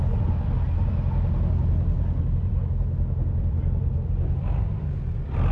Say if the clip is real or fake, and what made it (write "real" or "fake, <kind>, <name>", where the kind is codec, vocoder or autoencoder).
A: real